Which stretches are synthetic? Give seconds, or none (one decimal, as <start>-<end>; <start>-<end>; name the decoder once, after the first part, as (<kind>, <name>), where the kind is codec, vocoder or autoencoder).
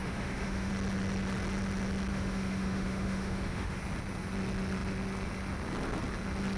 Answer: 0.0-0.7 (autoencoder, DAC-VAE); 2.1-3.8